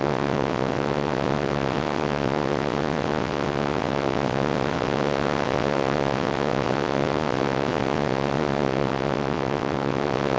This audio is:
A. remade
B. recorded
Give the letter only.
A